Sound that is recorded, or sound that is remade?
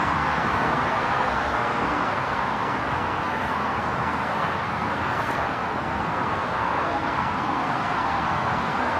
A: remade